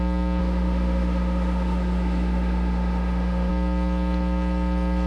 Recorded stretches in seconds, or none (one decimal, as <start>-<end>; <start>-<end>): 0.0-0.4; 3.5-5.1